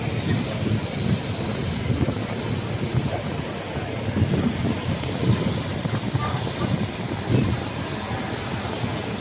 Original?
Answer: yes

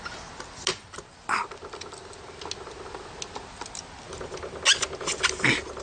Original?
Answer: yes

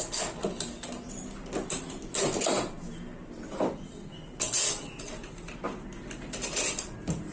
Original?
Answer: yes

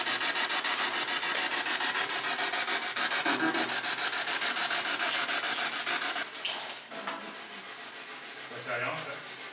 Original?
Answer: yes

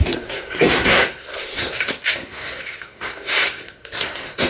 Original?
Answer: no